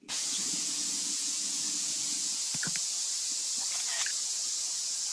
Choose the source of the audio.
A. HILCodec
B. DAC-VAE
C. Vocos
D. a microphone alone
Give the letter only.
C